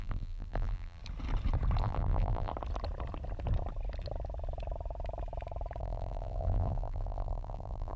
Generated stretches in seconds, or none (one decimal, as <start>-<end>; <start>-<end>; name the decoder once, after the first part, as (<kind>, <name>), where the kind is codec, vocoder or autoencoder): 0.0-1.0 (vocoder, BigVGAN v2); 1.8-2.5; 5.8-8.0